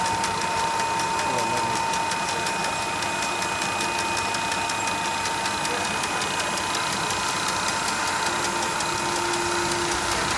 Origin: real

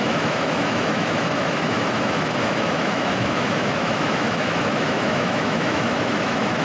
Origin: fake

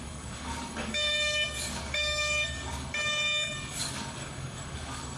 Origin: fake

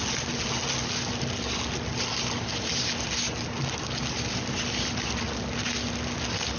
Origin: real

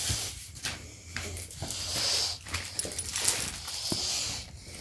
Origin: real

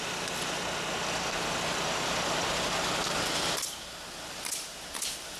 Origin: real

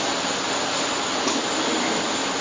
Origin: real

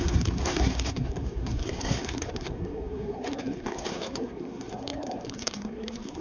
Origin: fake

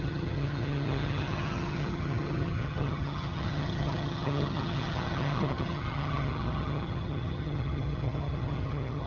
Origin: fake